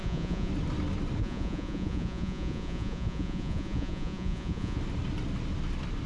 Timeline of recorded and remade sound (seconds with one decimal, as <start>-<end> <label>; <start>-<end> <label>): 0.0-0.5 remade; 0.5-1.2 recorded; 1.2-4.8 remade; 4.8-6.1 recorded